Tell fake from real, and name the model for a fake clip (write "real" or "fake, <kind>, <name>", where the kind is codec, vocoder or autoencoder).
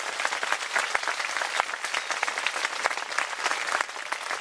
real